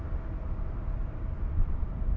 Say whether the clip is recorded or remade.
recorded